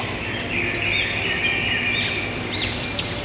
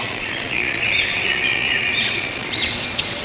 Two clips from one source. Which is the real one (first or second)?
first